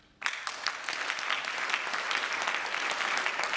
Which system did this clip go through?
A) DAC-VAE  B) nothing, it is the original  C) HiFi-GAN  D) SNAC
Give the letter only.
B